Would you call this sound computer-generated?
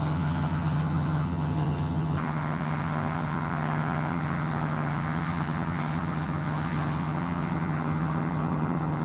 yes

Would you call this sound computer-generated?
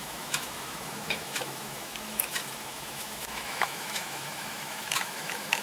yes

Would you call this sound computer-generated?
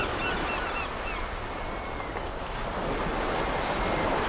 no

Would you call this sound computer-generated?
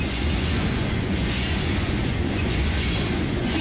yes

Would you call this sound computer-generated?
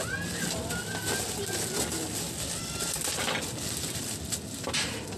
no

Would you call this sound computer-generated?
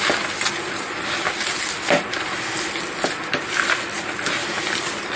no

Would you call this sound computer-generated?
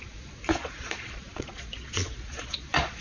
yes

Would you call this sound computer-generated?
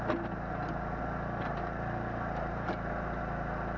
no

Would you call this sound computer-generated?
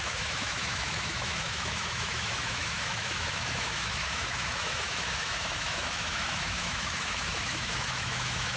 yes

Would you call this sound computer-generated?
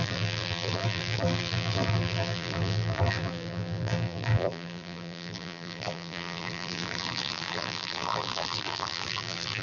yes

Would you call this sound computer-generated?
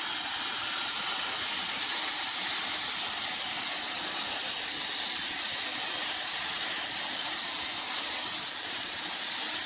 no